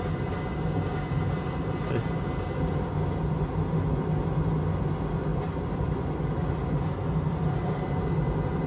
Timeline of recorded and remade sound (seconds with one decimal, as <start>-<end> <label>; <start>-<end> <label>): 0.0-5.3 recorded; 5.3-6.0 remade; 6.0-8.7 recorded